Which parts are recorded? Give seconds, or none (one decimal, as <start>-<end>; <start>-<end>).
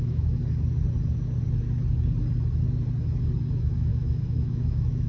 0.4-3.5